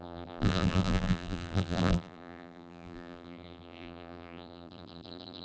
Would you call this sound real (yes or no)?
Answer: no